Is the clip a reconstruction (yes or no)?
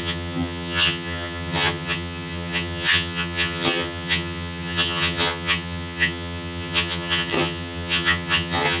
yes